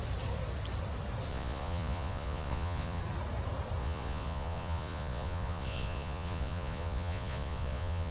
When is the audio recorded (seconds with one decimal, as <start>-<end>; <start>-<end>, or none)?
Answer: 0.0-1.3; 3.0-3.8